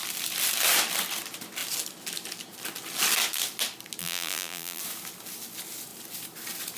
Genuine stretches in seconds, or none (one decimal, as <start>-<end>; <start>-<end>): 0.0-4.0; 4.8-6.8